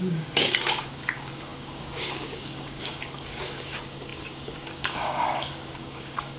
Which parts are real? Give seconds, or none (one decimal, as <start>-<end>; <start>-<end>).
none

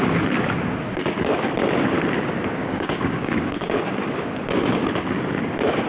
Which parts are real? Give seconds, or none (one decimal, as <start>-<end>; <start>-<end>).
0.0-2.6; 3.8-5.9

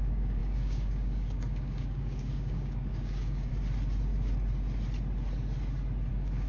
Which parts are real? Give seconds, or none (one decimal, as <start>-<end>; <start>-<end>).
3.5-6.1

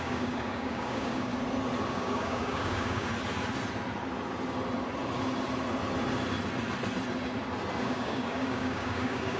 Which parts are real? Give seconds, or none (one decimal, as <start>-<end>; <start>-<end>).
1.3-1.9; 3.1-7.8

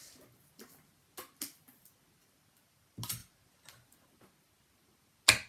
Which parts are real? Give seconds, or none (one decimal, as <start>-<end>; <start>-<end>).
0.0-5.5

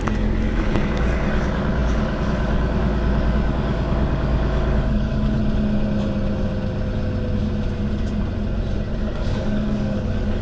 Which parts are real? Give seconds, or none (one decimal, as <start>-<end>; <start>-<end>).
5.4-9.0